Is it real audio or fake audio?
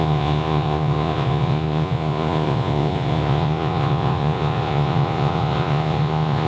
fake